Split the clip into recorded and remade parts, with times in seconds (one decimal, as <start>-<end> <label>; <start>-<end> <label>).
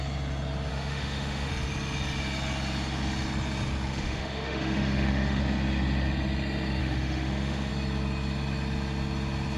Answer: 0.0-0.7 recorded; 0.7-1.5 remade; 1.5-3.9 recorded; 3.9-5.4 remade; 5.4-6.8 recorded; 6.8-7.7 remade; 7.7-9.6 recorded